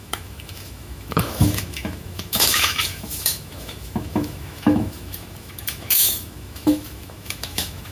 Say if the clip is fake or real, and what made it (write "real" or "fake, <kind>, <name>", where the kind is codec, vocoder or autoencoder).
fake, autoencoder, DAC-VAE